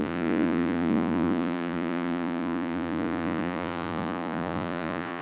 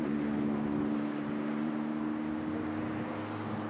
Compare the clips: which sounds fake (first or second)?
first